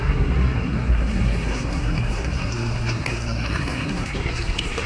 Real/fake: fake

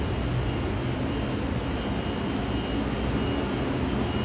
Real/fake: real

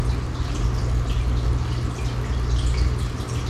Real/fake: real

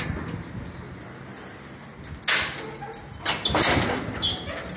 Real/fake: real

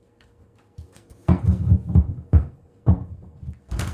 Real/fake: fake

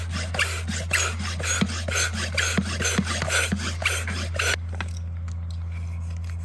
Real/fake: real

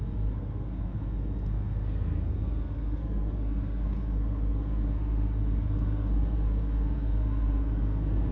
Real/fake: fake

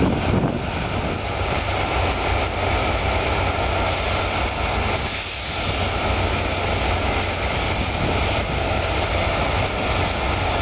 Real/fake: real